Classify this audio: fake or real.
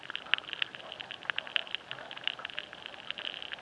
real